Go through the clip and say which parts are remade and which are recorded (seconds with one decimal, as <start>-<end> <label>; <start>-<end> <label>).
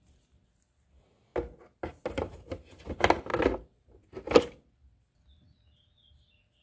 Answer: 0.0-6.6 recorded